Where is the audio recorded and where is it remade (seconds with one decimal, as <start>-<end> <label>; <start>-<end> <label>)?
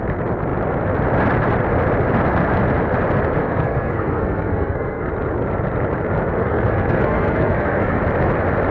0.0-3.4 recorded; 3.4-5.1 remade; 5.1-6.4 recorded; 6.4-8.0 remade; 8.0-8.7 recorded